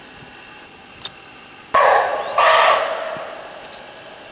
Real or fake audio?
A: real